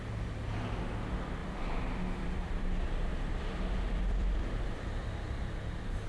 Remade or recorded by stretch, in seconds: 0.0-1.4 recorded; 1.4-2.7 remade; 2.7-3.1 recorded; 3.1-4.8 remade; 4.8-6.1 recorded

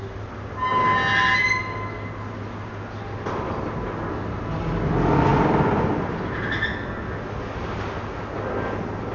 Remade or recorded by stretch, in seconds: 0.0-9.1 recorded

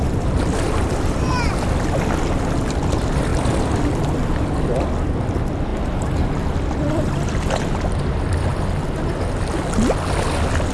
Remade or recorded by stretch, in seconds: 0.0-10.7 recorded

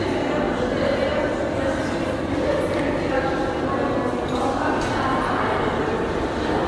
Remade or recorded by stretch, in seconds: 0.0-6.7 recorded

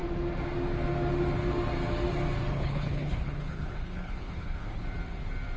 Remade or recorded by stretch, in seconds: 0.0-2.5 recorded; 2.5-4.8 remade; 4.8-5.6 recorded

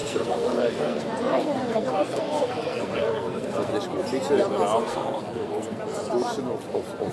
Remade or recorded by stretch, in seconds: 0.0-3.7 remade; 3.7-4.8 recorded; 4.8-5.8 remade; 5.8-7.1 recorded

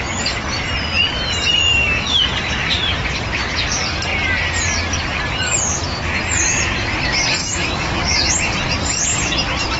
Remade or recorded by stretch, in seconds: 0.0-1.7 recorded; 1.7-2.2 remade; 2.2-7.4 recorded; 7.4-8.3 remade; 8.3-9.8 recorded

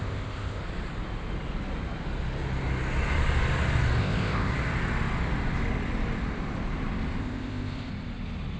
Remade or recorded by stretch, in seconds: 0.0-0.6 remade; 0.6-4.0 recorded; 4.0-4.5 remade; 4.5-7.2 recorded; 7.2-7.9 remade; 7.9-8.6 recorded